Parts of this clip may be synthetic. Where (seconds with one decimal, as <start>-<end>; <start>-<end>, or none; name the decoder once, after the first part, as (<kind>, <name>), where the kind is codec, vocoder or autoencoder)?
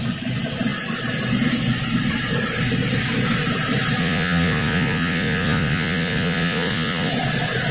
4.0-7.1 (vocoder, Vocos)